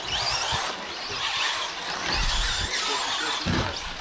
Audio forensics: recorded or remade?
recorded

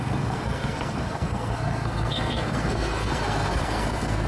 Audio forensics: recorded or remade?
remade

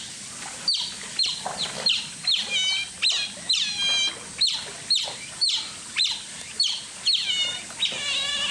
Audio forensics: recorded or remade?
recorded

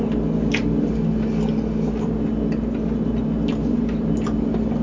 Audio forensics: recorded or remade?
recorded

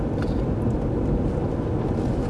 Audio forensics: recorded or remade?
recorded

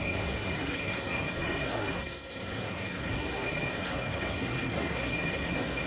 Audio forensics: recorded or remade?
remade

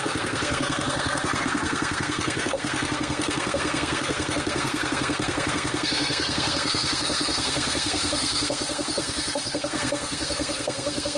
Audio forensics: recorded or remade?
remade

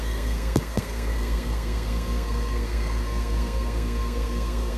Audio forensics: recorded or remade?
remade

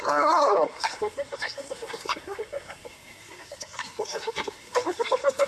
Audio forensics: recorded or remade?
remade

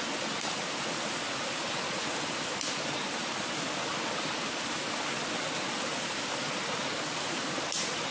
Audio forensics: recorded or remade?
recorded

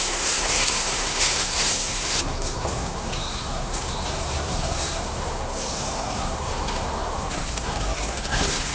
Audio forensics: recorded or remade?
remade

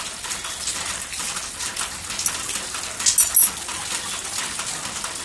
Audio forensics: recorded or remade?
recorded